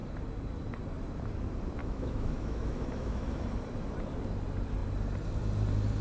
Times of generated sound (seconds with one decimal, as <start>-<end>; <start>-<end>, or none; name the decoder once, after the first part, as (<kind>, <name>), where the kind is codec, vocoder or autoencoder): 1.8-3.4 (autoencoder, DAC-VAE)